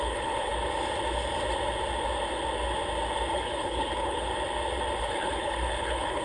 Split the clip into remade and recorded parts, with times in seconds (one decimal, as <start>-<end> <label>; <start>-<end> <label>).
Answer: 0.0-0.5 remade; 0.5-3.3 recorded; 3.3-4.3 remade; 4.3-5.0 recorded; 5.0-6.2 remade